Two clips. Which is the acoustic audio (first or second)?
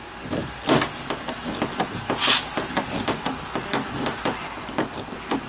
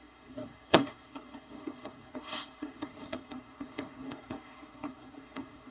first